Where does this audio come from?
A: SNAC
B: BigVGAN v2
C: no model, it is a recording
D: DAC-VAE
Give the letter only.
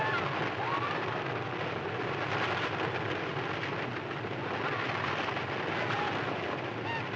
C